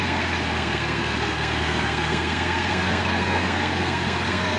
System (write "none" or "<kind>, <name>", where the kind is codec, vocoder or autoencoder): codec, SNAC